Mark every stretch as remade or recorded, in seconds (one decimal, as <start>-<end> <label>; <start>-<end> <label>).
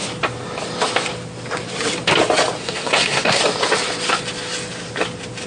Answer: 0.0-2.6 recorded; 2.6-3.4 remade; 3.4-5.5 recorded